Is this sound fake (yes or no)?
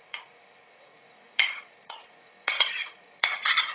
yes